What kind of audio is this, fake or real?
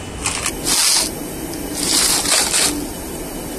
real